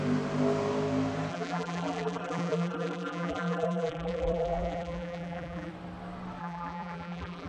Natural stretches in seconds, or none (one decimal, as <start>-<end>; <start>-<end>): 0.0-1.3; 5.7-6.4